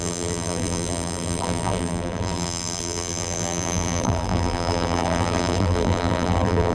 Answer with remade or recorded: remade